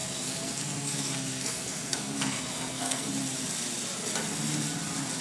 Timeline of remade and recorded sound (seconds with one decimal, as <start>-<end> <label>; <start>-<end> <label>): 0.0-3.1 remade; 3.1-5.2 recorded